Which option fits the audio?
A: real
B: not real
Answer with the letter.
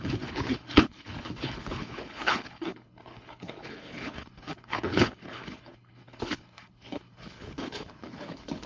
B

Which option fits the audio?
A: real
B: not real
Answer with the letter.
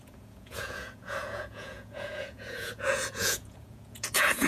B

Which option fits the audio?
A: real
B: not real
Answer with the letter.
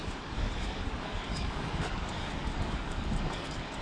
B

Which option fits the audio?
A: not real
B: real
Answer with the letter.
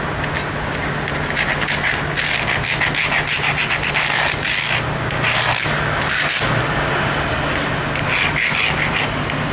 B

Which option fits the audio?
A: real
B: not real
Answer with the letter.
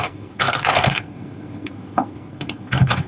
B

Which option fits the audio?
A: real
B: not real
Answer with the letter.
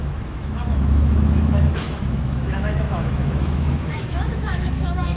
B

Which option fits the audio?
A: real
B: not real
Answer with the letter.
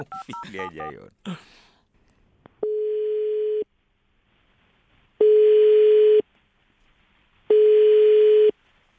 A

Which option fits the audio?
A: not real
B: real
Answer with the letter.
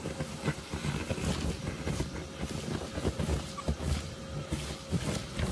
B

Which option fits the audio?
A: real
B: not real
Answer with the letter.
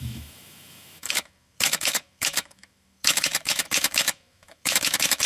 B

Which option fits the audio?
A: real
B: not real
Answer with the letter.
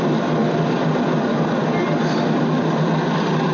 A